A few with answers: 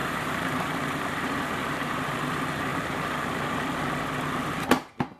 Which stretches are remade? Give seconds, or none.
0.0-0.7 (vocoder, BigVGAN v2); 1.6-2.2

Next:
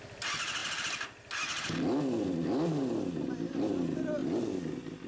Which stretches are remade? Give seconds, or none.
none